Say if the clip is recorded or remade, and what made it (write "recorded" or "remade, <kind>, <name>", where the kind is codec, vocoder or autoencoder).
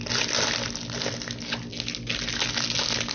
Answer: recorded